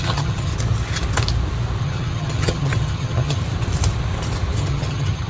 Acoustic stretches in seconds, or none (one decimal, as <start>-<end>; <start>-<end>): 0.5-1.8; 3.4-4.6